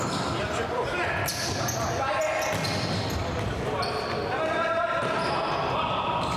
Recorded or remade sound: recorded